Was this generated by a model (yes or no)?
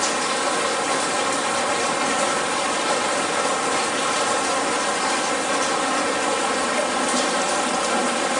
no